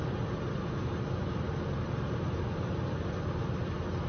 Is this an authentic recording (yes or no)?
yes